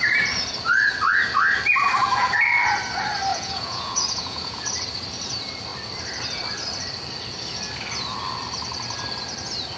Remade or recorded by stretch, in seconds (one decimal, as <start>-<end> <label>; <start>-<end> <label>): 0.0-3.3 recorded; 3.3-4.7 remade; 4.7-9.8 recorded